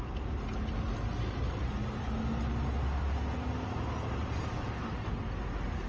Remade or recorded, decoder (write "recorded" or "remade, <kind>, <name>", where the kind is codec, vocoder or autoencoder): recorded